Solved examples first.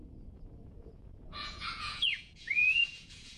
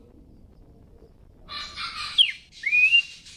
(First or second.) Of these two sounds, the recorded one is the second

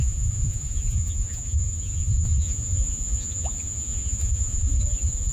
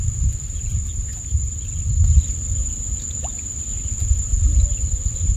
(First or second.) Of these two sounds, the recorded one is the second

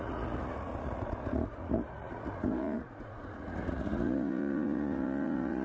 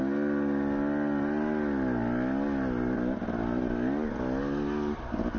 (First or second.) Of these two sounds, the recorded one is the second